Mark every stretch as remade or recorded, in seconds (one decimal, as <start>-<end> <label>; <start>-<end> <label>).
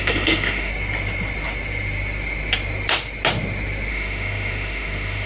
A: 0.0-0.7 remade; 0.7-3.9 recorded; 3.9-5.3 remade